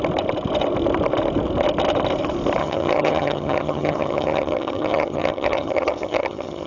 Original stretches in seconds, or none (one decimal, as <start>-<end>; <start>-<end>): 0.0-2.6